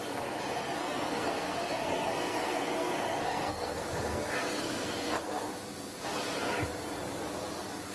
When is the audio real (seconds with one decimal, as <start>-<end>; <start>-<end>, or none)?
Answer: 0.0-0.8; 5.5-7.9

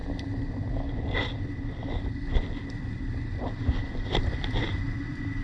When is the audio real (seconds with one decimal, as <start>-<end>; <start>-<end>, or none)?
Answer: 0.0-5.4

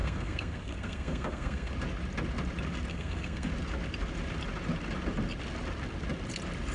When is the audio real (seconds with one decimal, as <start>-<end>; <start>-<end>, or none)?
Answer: 1.7-2.9; 3.5-6.7

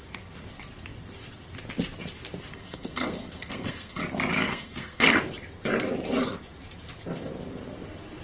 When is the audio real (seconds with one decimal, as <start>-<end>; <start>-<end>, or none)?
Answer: 0.0-2.5; 4.0-4.5; 5.2-8.2

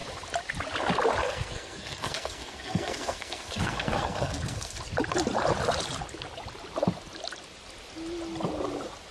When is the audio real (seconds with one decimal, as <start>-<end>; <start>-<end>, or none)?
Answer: 0.0-1.2; 4.8-9.1